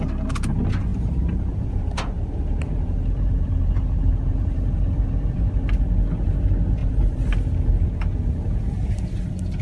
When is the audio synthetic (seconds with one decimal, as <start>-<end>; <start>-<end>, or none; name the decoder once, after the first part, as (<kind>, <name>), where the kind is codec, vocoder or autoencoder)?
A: 0.9-5.6 (vocoder, BigVGAN v2); 6.8-7.4